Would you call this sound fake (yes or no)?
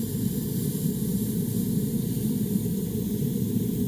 yes